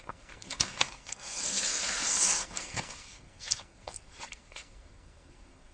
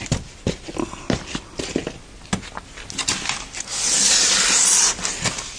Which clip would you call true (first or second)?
second